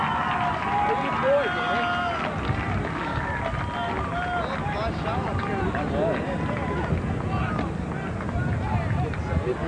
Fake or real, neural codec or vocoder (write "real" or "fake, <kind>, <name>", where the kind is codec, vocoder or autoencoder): real